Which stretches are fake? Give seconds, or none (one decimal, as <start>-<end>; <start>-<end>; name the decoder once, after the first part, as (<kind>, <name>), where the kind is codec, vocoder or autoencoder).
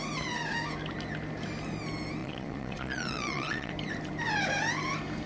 2.2-3.7 (vocoder, Vocos)